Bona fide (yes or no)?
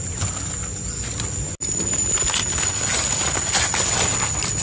yes